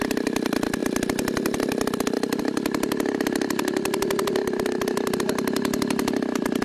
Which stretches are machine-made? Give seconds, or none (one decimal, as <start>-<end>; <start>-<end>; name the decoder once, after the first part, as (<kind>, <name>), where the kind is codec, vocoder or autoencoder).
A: none